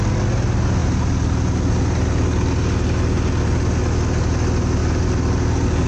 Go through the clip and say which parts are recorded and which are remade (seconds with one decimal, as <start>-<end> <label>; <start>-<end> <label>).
0.0-5.9 recorded